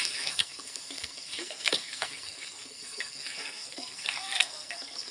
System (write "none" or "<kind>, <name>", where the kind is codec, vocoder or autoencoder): codec, SNAC